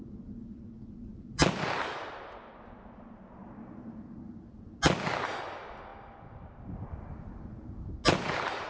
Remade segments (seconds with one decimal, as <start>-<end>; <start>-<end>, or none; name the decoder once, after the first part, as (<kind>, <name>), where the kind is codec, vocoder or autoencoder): none